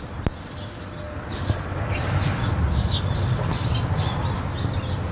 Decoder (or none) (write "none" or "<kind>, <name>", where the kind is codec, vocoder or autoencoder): none